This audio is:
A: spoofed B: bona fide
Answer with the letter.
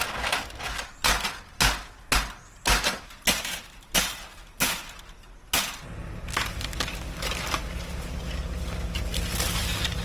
B